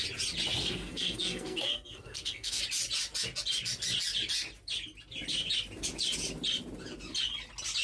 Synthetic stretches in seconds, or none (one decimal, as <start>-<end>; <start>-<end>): 0.6-2.6